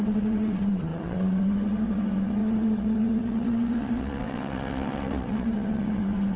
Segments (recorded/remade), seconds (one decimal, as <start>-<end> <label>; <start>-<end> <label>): 0.0-6.4 remade